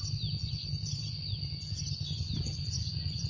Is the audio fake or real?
real